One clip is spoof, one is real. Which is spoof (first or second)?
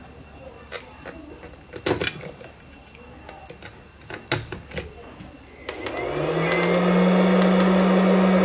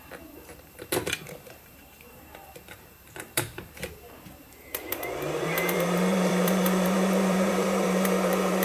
second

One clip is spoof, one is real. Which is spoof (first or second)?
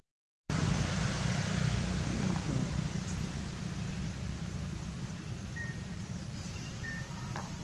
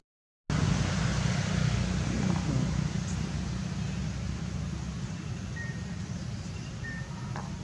first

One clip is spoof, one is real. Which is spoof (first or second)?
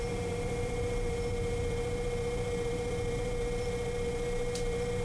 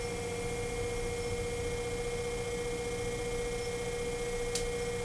first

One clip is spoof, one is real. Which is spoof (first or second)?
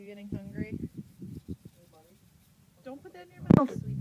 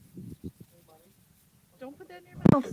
first